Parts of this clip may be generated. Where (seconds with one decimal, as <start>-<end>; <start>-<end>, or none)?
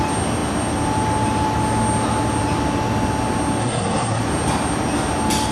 3.6-4.2